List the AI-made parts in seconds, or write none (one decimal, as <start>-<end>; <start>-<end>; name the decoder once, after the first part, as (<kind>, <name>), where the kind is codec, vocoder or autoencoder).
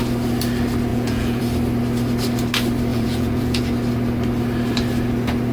0.9-1.4 (vocoder, Vocos); 2.9-3.6